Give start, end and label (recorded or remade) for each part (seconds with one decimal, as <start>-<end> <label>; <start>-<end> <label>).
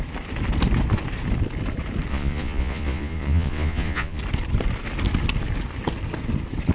0.0-2.1 recorded; 2.1-4.2 remade; 4.2-6.7 recorded